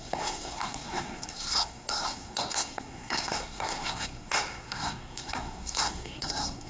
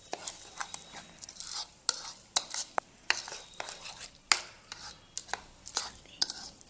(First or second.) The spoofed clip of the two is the first